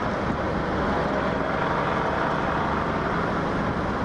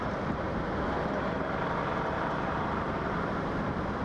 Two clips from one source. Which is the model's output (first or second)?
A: second